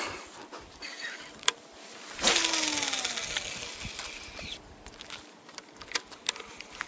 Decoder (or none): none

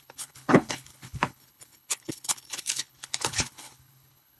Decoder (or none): codec, HILCodec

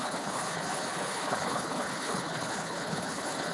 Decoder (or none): codec, HILCodec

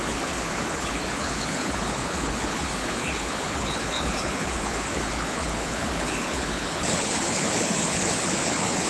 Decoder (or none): codec, HILCodec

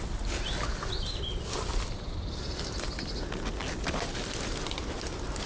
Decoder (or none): none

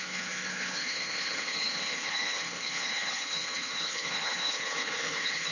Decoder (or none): codec, HILCodec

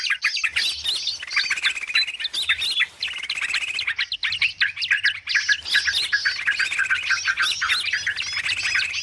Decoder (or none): none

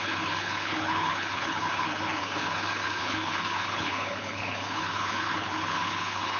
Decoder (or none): codec, HILCodec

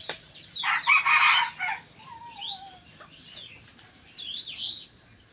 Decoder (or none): none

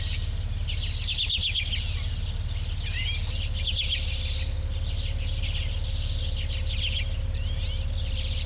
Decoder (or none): none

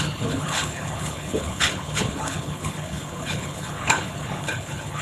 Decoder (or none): codec, HILCodec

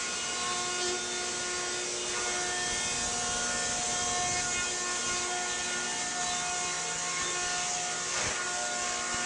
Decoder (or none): none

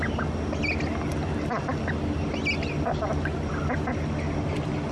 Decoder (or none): none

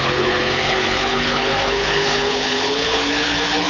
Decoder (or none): codec, HILCodec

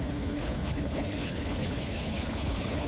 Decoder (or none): codec, HILCodec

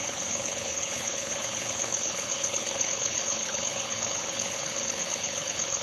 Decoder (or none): codec, HILCodec